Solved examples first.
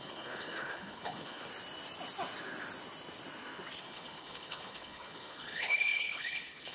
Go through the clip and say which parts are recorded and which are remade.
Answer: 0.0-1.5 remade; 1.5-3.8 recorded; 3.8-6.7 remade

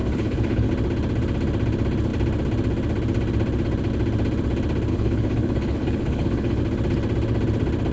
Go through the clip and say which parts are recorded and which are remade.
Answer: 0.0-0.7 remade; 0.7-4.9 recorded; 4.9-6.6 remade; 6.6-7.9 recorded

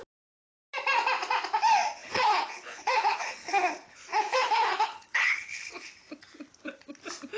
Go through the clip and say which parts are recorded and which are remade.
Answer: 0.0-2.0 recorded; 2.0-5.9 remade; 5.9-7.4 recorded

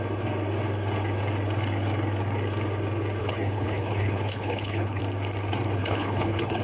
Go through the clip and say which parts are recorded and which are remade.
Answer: 0.0-3.2 recorded; 3.2-5.0 remade; 5.0-5.8 recorded; 5.8-6.6 remade

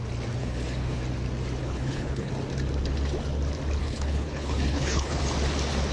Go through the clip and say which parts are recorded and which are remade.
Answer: 0.0-0.4 recorded; 0.4-1.0 remade; 1.0-1.6 recorded; 1.6-2.3 remade; 2.3-3.8 recorded; 3.8-5.2 remade; 5.2-5.9 recorded

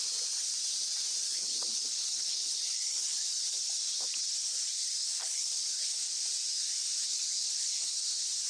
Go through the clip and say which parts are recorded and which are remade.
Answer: 0.0-1.3 recorded; 1.3-3.6 remade; 3.6-5.0 recorded; 5.0-5.6 remade; 5.6-7.1 recorded; 7.1-8.0 remade; 8.0-8.5 recorded